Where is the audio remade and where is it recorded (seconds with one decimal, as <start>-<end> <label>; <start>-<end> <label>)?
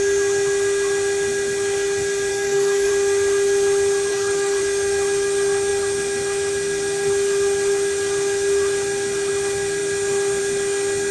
0.0-2.3 recorded; 2.3-2.9 remade; 2.9-4.1 recorded; 4.1-4.6 remade; 4.6-11.1 recorded